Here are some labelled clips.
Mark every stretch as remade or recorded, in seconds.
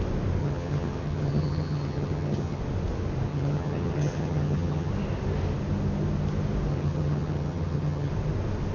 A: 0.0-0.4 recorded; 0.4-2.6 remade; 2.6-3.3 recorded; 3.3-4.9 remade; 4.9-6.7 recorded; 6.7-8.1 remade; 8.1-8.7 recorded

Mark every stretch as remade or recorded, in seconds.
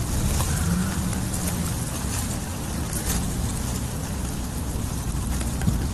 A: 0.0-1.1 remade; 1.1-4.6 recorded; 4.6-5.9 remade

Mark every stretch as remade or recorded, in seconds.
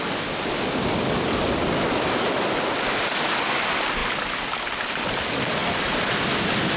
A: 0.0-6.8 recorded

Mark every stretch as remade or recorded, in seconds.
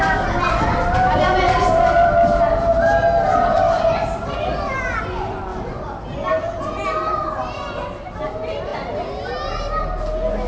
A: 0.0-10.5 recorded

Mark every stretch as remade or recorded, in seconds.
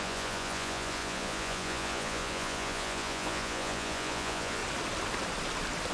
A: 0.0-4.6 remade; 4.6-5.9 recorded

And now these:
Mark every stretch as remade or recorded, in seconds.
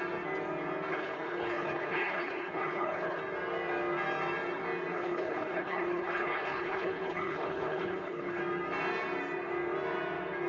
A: 0.0-0.9 recorded; 0.9-3.2 remade; 3.2-4.9 recorded; 4.9-8.4 remade; 8.4-10.5 recorded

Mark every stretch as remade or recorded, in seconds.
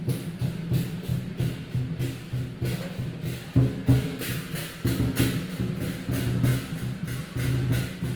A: 0.0-8.1 recorded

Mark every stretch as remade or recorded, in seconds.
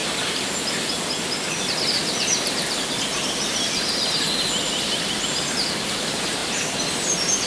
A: 0.0-7.5 recorded